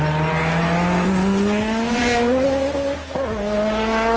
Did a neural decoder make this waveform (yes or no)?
no